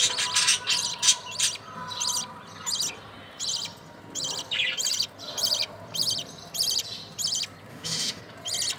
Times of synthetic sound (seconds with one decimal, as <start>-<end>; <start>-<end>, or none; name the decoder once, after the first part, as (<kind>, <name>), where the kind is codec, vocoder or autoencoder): 7.7-8.2 (autoencoder, DAC-VAE)